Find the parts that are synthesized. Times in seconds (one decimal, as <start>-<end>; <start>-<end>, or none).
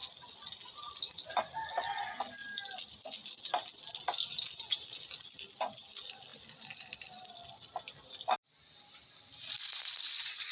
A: none